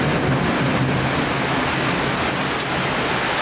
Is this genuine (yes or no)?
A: yes